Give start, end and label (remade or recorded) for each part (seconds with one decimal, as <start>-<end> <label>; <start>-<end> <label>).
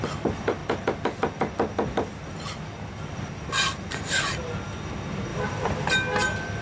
0.0-5.3 recorded; 5.3-5.9 remade; 5.9-6.6 recorded